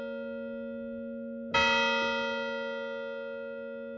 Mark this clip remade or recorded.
recorded